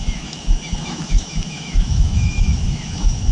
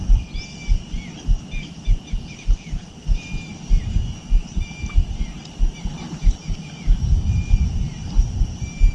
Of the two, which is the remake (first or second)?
first